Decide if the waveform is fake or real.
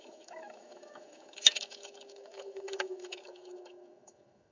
fake